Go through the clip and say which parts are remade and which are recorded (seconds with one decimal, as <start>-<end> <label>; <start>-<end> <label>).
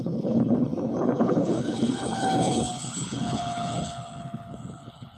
0.0-5.2 remade